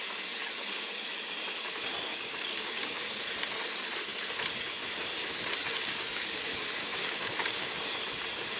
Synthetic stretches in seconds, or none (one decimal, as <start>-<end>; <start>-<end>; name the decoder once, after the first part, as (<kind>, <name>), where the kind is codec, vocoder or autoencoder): 2.1-3.0 (codec, DAC); 5.7-6.4; 7.0-7.9